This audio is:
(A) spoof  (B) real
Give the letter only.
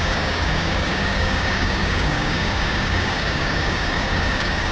A